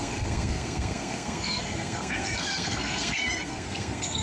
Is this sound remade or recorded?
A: remade